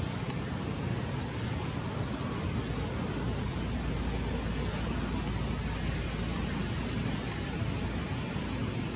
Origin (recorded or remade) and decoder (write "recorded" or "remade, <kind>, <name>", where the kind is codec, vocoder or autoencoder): recorded